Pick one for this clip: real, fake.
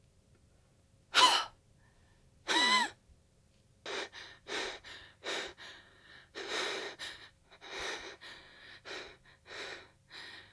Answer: real